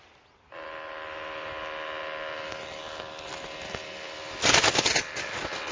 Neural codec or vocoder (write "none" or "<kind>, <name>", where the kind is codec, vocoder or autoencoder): none